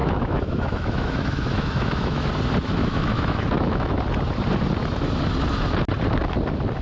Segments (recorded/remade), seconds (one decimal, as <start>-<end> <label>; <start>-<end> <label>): 0.0-2.3 remade; 2.3-2.8 recorded; 2.8-4.0 remade; 4.0-6.8 recorded